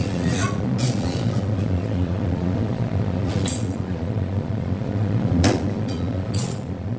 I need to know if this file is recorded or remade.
remade